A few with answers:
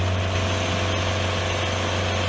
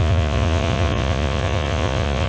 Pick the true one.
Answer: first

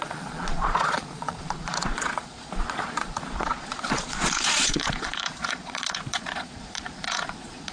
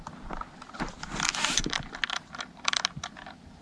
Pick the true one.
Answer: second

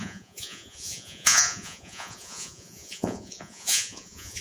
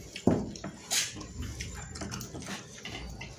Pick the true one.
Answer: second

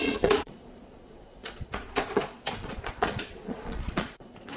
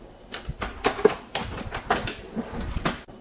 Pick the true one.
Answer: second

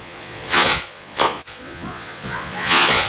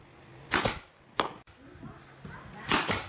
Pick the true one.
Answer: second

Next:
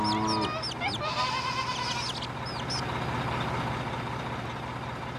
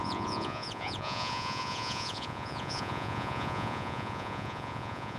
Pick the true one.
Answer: first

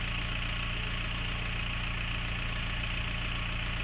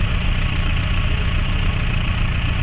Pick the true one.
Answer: first